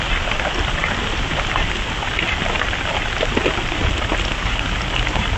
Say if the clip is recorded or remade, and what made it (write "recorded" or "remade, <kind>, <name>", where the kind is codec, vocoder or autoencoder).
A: recorded